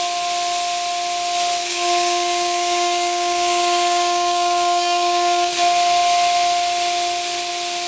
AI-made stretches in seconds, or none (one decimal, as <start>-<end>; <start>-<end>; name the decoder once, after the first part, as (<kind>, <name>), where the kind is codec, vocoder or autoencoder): 1.6-5.5 (codec, DAC)